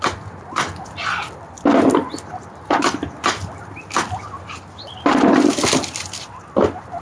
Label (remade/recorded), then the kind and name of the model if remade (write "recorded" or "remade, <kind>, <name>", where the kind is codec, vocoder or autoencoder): recorded